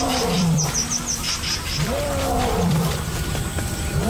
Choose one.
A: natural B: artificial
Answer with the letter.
B